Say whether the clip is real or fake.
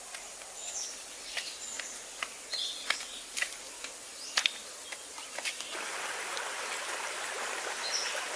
real